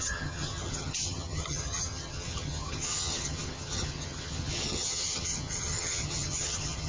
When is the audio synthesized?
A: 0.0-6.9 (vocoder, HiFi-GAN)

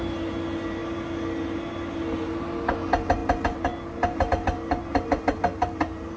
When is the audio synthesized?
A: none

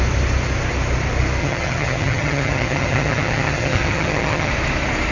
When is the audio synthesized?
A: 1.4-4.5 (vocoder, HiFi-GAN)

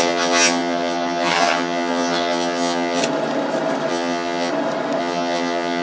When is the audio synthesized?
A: 0.0-3.0 (vocoder, HiFi-GAN); 3.9-4.5; 5.0-5.8

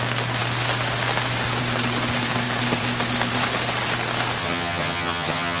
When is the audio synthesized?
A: 4.4-5.6 (vocoder, HiFi-GAN)

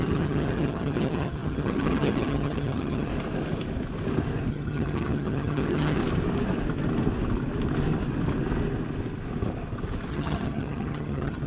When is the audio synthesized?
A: 0.0-3.1 (vocoder, HiFi-GAN); 4.5-6.0; 10.1-11.5